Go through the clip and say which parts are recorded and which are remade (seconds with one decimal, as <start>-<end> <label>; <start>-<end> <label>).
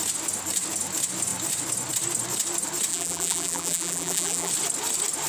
0.0-2.9 recorded; 2.9-4.5 remade; 4.5-5.3 recorded